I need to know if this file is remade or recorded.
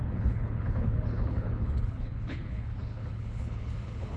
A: remade